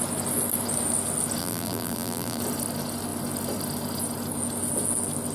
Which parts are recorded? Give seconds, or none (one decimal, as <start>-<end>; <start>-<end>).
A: 0.0-1.4; 2.4-5.3